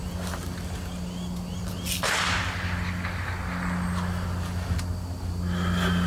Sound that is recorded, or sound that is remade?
recorded